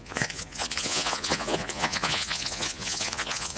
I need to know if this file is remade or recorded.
remade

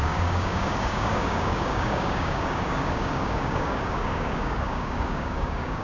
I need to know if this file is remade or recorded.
remade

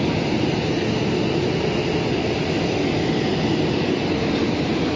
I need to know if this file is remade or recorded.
recorded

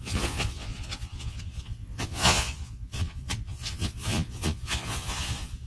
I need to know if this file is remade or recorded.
remade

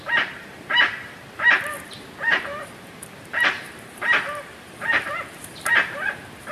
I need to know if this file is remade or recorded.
remade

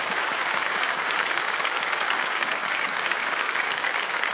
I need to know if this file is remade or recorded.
remade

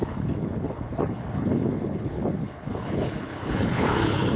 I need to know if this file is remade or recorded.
remade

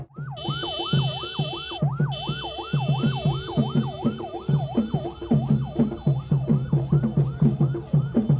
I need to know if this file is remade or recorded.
recorded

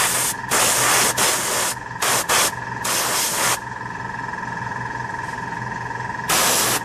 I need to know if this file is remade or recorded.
recorded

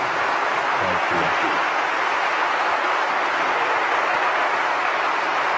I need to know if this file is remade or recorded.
recorded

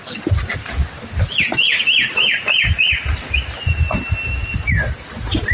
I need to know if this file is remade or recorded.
recorded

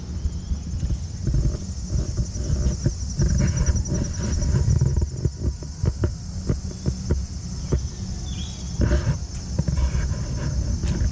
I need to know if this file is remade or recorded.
recorded